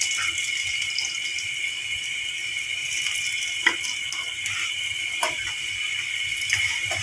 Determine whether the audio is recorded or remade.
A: recorded